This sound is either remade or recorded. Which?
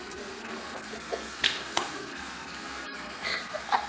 remade